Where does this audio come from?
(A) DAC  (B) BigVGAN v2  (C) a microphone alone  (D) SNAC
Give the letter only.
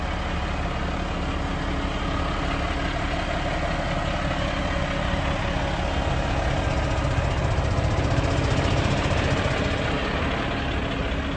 C